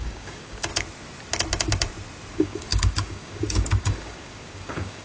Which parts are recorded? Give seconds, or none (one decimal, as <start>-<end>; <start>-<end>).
0.7-2.3